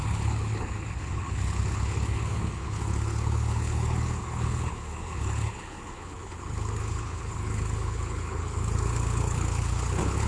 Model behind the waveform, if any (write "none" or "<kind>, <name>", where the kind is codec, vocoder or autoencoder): codec, HILCodec